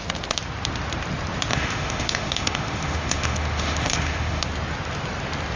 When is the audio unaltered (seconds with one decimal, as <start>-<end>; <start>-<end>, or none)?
0.0-1.5; 4.4-5.6